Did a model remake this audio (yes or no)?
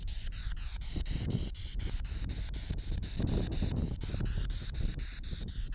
no